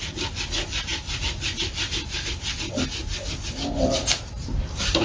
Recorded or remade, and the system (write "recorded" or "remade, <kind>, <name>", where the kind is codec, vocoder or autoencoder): recorded